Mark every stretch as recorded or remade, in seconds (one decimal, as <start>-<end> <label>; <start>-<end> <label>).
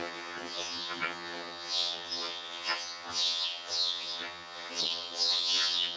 0.0-6.0 remade